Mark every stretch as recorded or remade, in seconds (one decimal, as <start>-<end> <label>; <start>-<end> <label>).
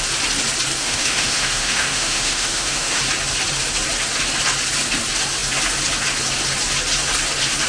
0.0-0.8 recorded; 0.8-3.0 remade; 3.0-7.7 recorded